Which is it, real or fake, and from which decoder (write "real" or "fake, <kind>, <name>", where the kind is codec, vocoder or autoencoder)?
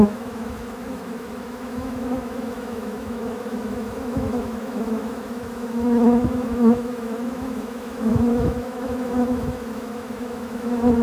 fake, autoencoder, DAC-VAE